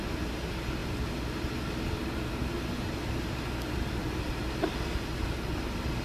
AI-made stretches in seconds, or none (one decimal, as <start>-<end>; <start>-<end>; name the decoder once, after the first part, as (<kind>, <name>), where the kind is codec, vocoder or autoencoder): none